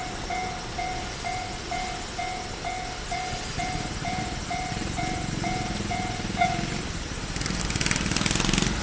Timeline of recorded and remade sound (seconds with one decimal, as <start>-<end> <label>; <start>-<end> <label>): 0.0-8.8 recorded